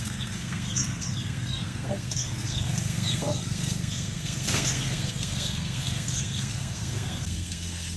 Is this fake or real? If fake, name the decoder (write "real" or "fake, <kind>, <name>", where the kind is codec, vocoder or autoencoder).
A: fake, codec, SNAC